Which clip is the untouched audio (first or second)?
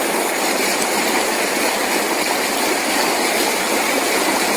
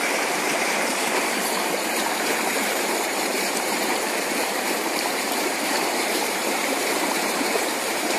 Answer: first